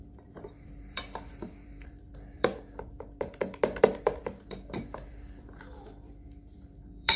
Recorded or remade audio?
remade